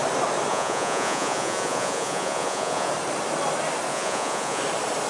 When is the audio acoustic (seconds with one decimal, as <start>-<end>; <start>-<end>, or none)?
0.0-0.5; 2.9-3.9; 4.6-5.1